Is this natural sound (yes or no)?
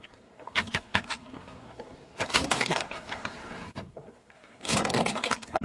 no